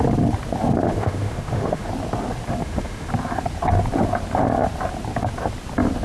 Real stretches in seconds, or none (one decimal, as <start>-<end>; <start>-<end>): 0.0-0.9; 1.9-2.6; 3.1-6.0